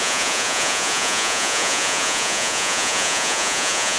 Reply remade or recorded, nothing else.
remade